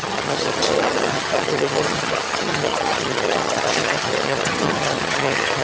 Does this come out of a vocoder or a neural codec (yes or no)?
yes